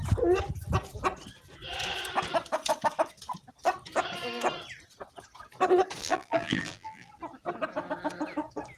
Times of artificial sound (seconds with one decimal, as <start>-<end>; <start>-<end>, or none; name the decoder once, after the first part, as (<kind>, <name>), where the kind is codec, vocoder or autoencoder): 6.0-7.1 (vocoder, BigVGAN v2)